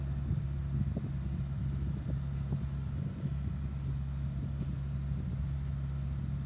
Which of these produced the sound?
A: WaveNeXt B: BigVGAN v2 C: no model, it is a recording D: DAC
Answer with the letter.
C